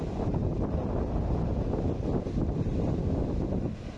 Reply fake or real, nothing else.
real